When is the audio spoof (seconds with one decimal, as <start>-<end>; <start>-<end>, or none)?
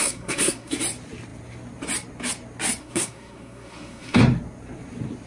0.0-0.7; 2.8-4.2